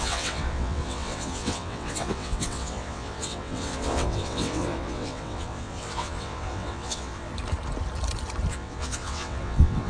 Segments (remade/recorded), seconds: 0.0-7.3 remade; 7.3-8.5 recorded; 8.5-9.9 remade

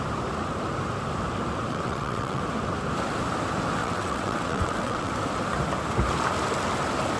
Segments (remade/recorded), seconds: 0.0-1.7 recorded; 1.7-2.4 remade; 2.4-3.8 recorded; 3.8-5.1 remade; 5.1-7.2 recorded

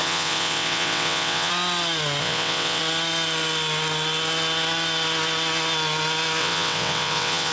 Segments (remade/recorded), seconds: 0.0-1.5 remade; 1.5-2.2 recorded; 2.2-2.8 remade; 2.8-6.4 recorded; 6.4-7.5 remade

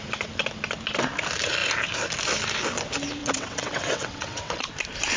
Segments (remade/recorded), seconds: 0.0-3.2 recorded; 3.2-4.7 remade; 4.7-5.2 recorded

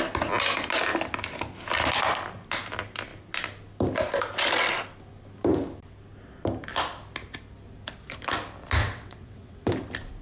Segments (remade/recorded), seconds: 0.0-8.8 recorded; 8.8-9.7 remade; 9.7-10.2 recorded